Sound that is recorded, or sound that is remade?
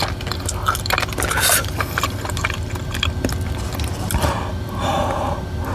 recorded